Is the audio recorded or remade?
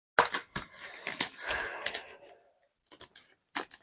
recorded